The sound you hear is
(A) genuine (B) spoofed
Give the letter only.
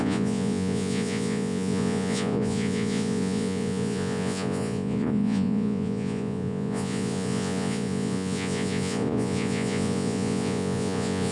B